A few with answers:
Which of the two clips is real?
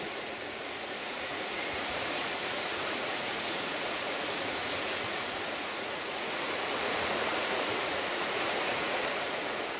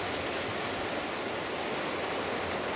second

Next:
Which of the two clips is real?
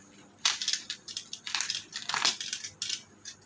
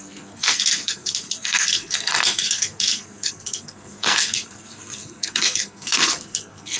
first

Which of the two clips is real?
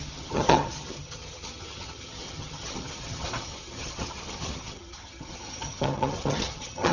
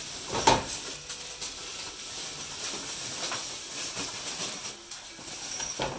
second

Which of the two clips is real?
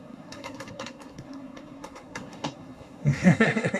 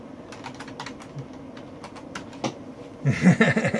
second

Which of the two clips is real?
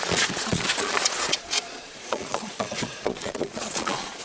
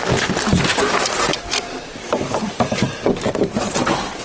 second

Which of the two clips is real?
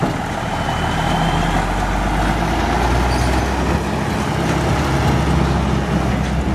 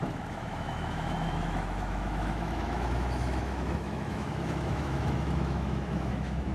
first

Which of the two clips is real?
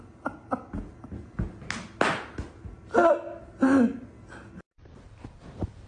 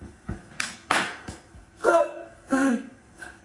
first